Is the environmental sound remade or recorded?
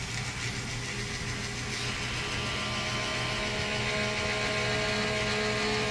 recorded